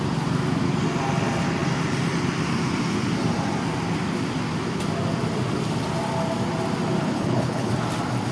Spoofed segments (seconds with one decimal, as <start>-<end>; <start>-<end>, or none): 7.0-7.7